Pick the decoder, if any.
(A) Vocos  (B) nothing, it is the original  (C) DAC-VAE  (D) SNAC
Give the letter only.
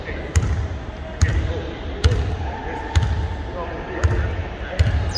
B